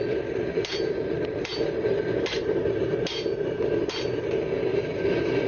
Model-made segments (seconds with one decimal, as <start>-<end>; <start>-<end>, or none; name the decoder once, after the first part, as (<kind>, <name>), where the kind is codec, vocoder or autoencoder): none